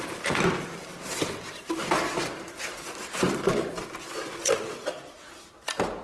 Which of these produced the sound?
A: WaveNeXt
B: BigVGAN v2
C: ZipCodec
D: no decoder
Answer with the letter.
B